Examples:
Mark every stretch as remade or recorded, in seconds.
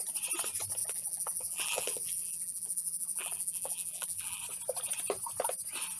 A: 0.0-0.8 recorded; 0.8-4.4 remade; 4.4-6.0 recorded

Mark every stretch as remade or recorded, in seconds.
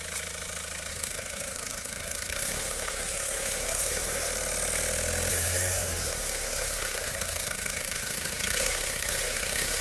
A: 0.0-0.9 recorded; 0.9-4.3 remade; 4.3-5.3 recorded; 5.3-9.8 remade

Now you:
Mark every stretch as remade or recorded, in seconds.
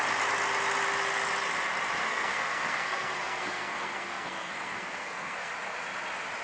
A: 0.0-2.0 recorded; 2.0-5.5 remade; 5.5-6.4 recorded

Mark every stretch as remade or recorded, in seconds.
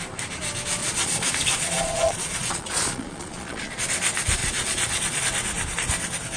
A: 0.0-0.8 recorded; 0.8-3.8 remade; 3.8-4.4 recorded; 4.4-5.2 remade; 5.2-6.4 recorded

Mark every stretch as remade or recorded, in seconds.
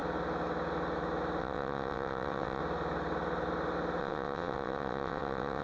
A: 0.0-1.4 recorded; 1.4-2.6 remade; 2.6-4.0 recorded; 4.0-5.6 remade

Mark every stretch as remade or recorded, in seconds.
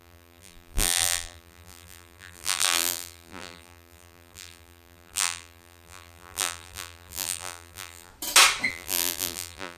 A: 0.0-8.1 remade; 8.1-8.7 recorded; 8.7-9.8 remade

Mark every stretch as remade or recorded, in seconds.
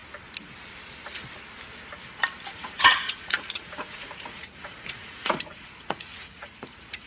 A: 0.0-2.5 recorded; 2.5-7.1 remade